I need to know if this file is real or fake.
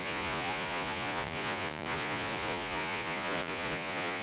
fake